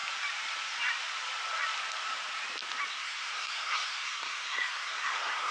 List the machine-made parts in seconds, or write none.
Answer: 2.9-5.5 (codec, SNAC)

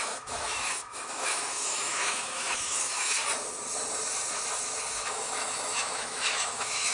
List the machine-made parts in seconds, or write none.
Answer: 0.0-3.2 (autoencoder, DAC-VAE); 4.9-6.9